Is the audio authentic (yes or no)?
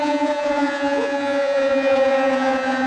no